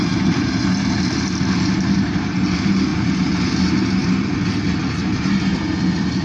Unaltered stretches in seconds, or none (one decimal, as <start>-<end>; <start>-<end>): 0.0-6.2